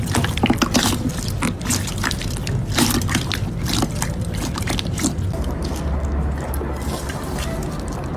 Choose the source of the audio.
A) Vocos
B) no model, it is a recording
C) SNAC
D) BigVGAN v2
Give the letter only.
B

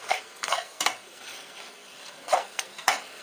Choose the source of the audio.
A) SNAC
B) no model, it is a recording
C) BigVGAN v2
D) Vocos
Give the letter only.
A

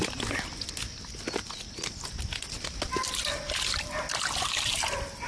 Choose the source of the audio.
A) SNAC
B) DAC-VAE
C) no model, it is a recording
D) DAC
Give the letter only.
C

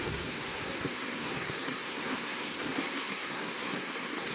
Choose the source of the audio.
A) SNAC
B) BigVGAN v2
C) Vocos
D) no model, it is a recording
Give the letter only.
A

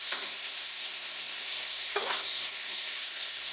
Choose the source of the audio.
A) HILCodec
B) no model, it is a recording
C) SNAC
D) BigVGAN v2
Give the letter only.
C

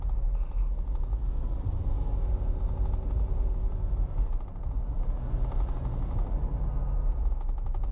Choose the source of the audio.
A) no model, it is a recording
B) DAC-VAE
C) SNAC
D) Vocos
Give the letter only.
A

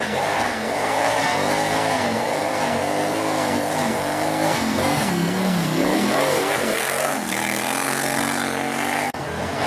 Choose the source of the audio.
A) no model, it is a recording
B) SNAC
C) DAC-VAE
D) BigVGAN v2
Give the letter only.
B